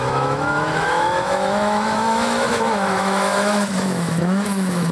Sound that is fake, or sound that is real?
fake